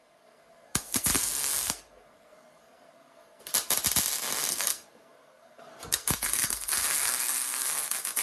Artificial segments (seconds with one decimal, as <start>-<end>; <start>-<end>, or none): 0.0-3.5; 4.5-8.2

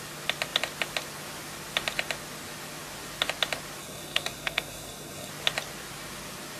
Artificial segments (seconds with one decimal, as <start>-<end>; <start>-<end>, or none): 3.8-5.3

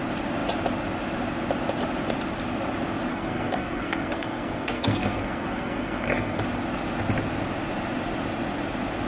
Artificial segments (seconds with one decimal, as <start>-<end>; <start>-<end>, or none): 3.1-6.4

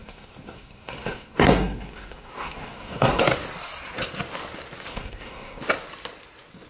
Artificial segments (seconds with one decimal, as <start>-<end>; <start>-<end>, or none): 0.0-3.2; 4.9-5.6

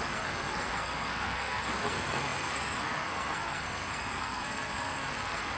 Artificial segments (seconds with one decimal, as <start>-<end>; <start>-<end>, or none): 0.0-5.6

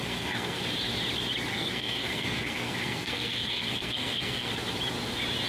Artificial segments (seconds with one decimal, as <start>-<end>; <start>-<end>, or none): 0.0-0.6; 1.5-4.5